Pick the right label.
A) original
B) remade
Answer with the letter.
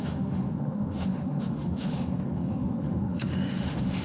B